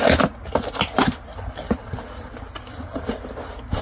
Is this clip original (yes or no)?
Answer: yes